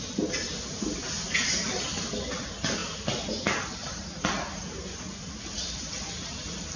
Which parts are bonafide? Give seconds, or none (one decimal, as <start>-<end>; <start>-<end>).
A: 0.0-6.8